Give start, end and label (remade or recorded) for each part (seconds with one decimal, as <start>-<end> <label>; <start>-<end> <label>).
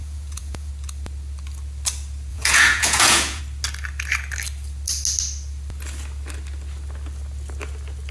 0.0-0.7 remade; 0.7-2.3 recorded; 2.3-3.4 remade; 3.4-8.1 recorded